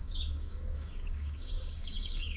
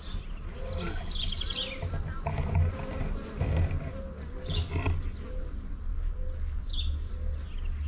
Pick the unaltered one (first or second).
second